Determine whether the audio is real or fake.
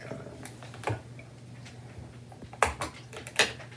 real